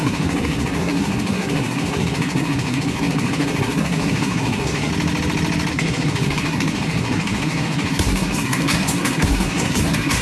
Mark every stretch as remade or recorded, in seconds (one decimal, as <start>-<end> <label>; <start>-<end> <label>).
0.0-4.9 remade; 4.9-5.7 recorded; 5.7-10.2 remade